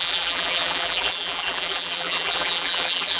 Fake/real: fake